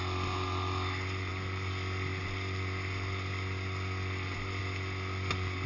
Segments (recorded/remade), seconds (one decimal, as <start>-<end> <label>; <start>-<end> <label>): 0.0-5.7 recorded